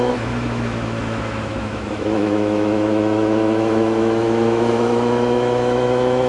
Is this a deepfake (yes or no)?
yes